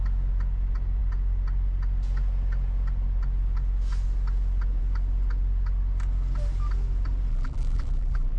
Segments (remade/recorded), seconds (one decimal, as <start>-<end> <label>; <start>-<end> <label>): 0.0-7.3 recorded; 7.3-8.4 remade